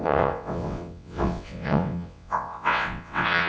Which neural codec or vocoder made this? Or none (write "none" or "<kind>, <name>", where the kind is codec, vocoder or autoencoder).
vocoder, WaveNeXt